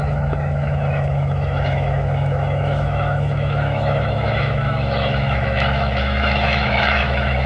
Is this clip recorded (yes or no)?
no